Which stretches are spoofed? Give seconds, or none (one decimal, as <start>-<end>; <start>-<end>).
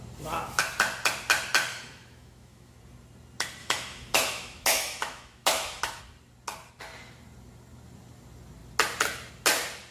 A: 1.7-2.8; 3.6-6.0